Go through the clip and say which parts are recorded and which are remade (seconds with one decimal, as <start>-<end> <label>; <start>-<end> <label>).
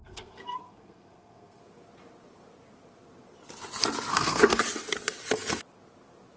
0.0-1.6 remade; 1.6-4.1 recorded; 4.1-4.6 remade; 4.6-6.4 recorded